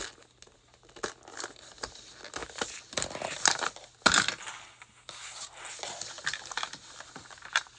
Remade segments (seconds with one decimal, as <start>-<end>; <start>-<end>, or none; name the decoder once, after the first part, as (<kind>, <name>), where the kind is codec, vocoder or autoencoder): none